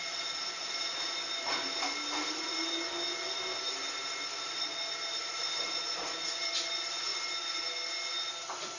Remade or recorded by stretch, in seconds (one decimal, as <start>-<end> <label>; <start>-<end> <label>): 0.0-8.8 recorded